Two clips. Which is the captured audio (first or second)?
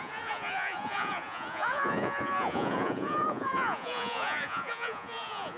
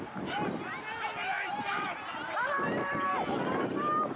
second